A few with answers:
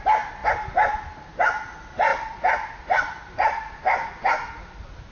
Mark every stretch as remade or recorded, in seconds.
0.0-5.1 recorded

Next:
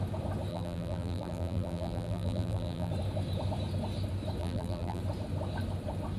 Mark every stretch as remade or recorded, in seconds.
0.0-0.5 recorded; 0.5-2.9 remade; 2.9-4.4 recorded; 4.4-5.0 remade; 5.0-6.2 recorded

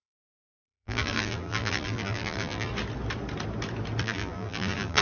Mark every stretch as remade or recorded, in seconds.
0.0-2.7 remade; 2.7-4.0 recorded; 4.0-5.0 remade

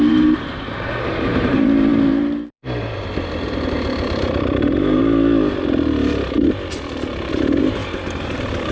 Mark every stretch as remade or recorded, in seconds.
0.0-5.0 remade; 5.0-7.3 recorded; 7.3-8.7 remade

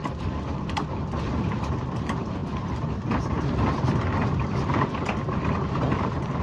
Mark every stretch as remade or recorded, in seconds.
0.0-1.7 recorded; 1.7-6.4 remade

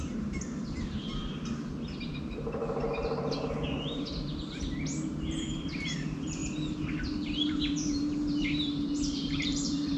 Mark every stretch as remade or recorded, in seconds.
0.0-1.2 remade; 1.2-5.1 recorded; 5.1-6.4 remade; 6.4-7.5 recorded; 7.5-10.0 remade

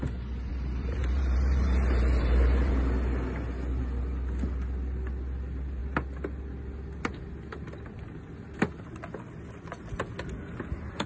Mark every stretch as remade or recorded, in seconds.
0.0-0.5 recorded; 0.5-2.7 remade; 2.7-11.1 recorded